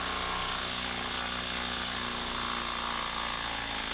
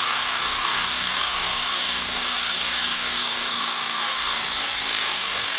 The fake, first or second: second